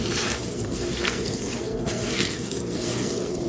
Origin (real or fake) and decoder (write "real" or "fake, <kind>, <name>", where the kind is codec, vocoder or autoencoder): fake, codec, SNAC